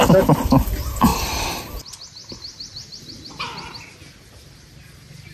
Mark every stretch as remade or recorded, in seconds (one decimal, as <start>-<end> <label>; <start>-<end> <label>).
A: 0.0-5.3 recorded